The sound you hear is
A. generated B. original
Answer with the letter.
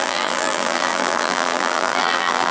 A